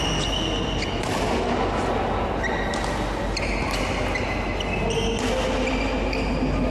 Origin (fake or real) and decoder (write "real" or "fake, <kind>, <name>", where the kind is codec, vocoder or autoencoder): real